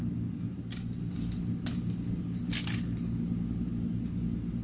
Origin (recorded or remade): recorded